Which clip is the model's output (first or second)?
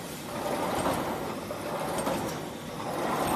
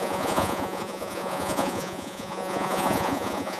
second